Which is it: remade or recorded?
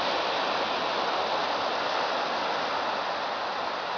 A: recorded